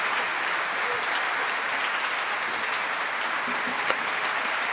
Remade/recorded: recorded